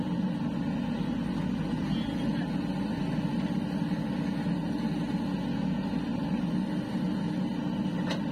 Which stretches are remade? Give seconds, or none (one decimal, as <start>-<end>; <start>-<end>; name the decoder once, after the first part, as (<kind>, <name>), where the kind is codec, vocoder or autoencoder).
none